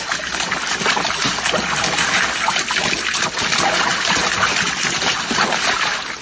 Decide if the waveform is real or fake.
real